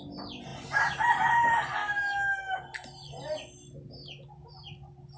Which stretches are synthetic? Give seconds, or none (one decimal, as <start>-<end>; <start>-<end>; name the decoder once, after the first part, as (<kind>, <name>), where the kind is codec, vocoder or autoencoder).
1.8-2.6 (autoencoder, DAC-VAE)

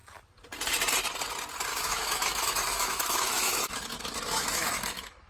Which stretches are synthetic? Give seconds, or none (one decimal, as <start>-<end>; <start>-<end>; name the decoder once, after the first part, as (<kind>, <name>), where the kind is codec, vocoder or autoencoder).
1.7-5.3 (autoencoder, DAC-VAE)

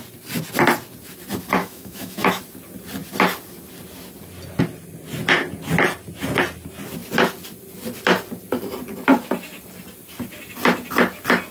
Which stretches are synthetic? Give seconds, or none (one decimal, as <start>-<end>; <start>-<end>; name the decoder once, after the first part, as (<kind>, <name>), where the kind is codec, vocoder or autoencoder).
1.6-2.4 (autoencoder, DAC-VAE)